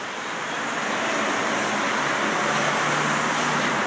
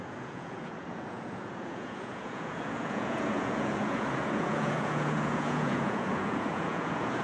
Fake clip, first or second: second